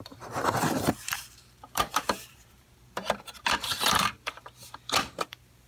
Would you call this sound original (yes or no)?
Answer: no